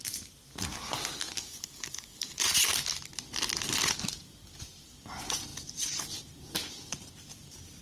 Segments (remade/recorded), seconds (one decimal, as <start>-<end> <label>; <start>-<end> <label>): 0.0-1.4 recorded; 1.4-2.4 remade; 2.4-7.8 recorded